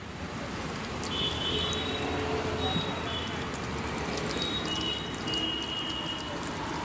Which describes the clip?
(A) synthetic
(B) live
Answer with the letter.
B